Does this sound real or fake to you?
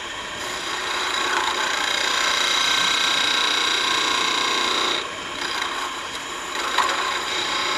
fake